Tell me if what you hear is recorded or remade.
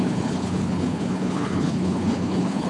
remade